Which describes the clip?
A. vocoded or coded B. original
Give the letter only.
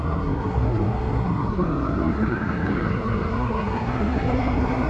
A